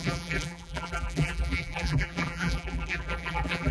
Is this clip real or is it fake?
fake